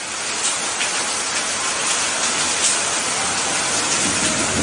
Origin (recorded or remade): recorded